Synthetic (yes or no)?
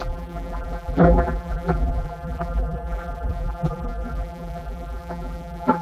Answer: yes